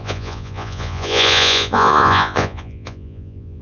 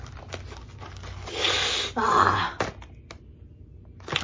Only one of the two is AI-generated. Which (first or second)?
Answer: first